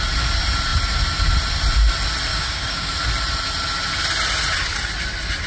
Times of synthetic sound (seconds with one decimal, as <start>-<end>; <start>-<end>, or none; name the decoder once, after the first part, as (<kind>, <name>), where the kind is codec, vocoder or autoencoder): 2.3-2.9 (codec, DAC)